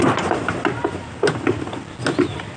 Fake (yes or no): no